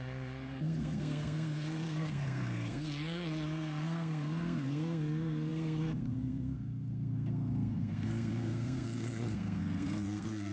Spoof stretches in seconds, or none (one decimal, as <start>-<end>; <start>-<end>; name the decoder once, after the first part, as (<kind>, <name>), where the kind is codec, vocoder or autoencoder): 0.0-10.5 (codec, SNAC)